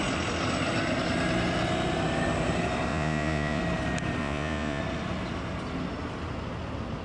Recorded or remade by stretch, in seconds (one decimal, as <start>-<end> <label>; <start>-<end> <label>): 0.0-2.9 recorded; 2.9-3.6 remade; 3.6-4.2 recorded; 4.2-4.8 remade; 4.8-7.0 recorded

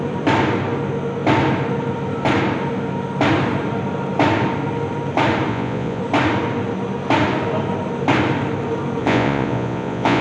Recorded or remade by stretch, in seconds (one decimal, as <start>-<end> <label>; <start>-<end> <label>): 0.0-5.5 recorded; 5.5-6.0 remade; 6.0-9.0 recorded; 9.0-10.2 remade

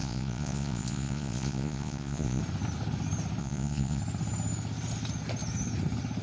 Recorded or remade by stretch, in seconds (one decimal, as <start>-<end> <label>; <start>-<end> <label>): 0.0-2.4 remade; 2.4-3.4 recorded; 3.4-4.0 remade; 4.0-6.2 recorded

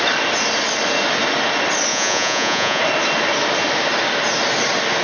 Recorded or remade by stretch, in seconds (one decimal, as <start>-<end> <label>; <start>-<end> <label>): 0.0-1.9 recorded; 1.9-2.8 remade; 2.8-5.0 recorded

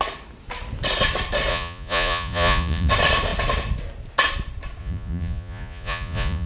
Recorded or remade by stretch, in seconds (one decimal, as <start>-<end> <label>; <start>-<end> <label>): 0.0-1.5 recorded; 1.5-2.9 remade; 2.9-4.8 recorded; 4.8-6.5 remade

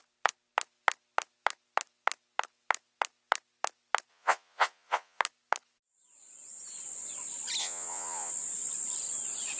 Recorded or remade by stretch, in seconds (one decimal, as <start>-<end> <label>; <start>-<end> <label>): 0.0-4.1 recorded; 4.1-5.2 remade; 5.2-7.6 recorded; 7.6-8.3 remade; 8.3-9.6 recorded

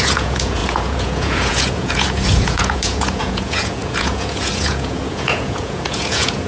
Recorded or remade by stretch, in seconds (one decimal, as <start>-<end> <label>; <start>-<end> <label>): 0.0-6.5 remade

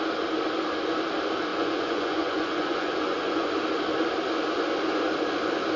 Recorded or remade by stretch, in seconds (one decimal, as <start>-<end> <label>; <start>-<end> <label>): 0.0-1.5 recorded; 1.5-3.5 remade; 3.5-5.8 recorded